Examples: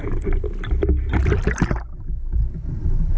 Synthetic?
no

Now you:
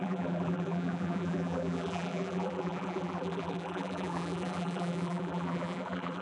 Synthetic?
yes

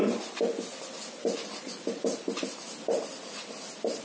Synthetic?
no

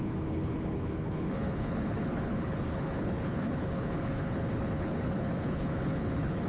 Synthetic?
yes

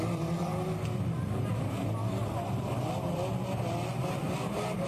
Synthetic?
no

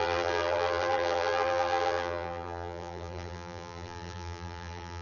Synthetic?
yes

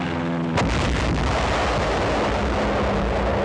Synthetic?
no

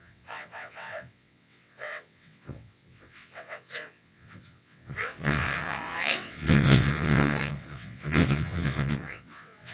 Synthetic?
yes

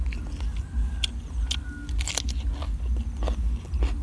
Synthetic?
no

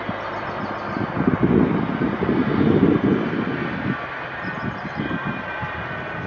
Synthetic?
no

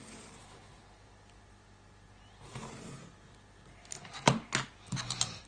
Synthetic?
no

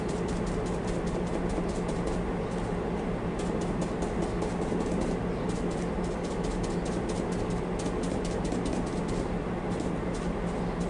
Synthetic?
no